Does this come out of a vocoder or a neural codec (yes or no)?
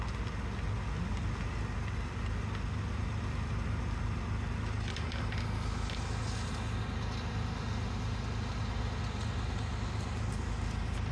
no